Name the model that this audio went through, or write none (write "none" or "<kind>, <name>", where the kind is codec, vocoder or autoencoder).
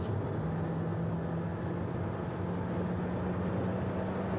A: none